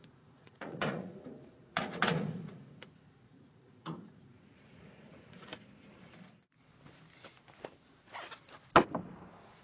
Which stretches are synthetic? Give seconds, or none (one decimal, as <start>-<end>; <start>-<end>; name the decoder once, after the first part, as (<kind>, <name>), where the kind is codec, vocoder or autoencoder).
0.0-5.5 (vocoder, Vocos)